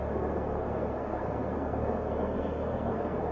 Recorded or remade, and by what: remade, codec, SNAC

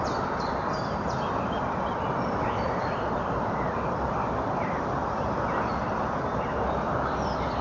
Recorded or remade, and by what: remade, vocoder, BigVGAN v2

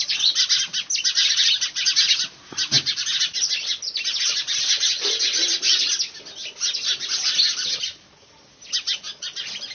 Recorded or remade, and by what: recorded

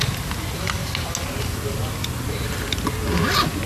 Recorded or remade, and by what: recorded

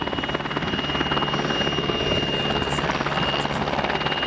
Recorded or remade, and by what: recorded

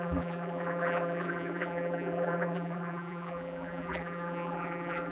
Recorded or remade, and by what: remade, vocoder, BigVGAN v2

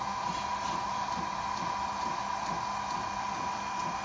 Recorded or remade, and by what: recorded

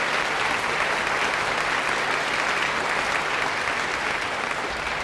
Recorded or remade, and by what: recorded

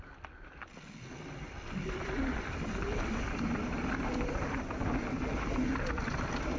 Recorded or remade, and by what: recorded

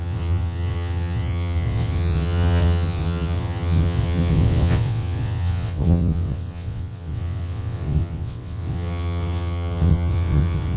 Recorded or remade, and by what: remade, vocoder, WaveNeXt